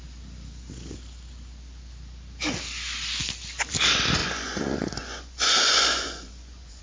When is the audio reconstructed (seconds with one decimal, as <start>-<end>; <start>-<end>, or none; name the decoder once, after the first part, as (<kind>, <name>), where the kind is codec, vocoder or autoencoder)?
4.2-6.8 (vocoder, Vocos)